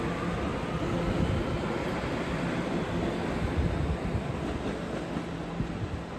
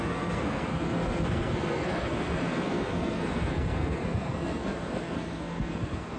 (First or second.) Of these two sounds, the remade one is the second